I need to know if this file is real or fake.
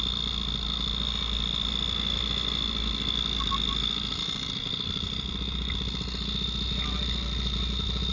real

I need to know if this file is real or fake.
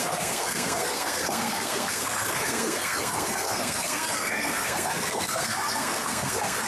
fake